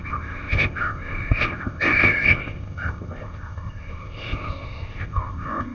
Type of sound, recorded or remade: remade